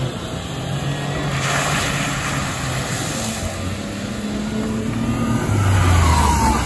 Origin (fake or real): real